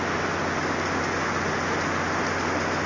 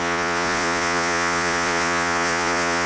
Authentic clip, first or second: first